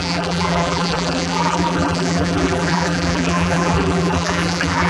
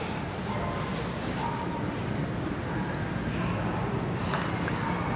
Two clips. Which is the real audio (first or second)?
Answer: second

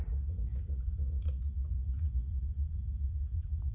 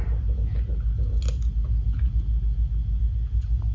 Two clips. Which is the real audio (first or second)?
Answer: second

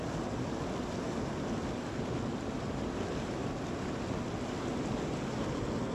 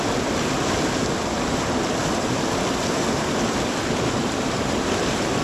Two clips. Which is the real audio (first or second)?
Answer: first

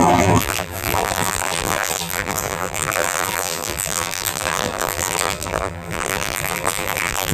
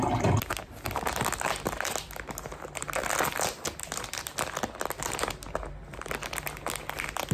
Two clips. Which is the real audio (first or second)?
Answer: second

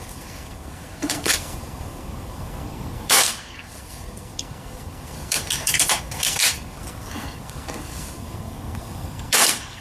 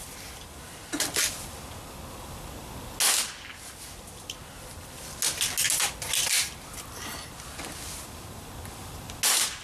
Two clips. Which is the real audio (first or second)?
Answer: second